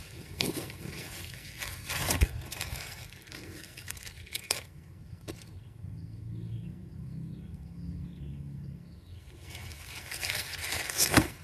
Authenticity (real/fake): fake